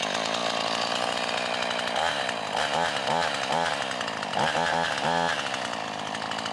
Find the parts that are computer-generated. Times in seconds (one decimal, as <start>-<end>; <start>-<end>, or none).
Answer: none